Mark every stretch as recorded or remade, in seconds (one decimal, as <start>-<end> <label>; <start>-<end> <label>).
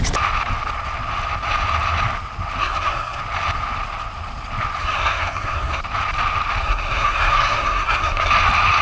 0.0-2.6 recorded; 2.6-3.2 remade; 3.2-4.8 recorded; 4.8-5.8 remade; 5.8-6.6 recorded; 6.6-8.3 remade; 8.3-8.8 recorded